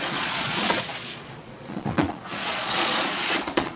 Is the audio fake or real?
fake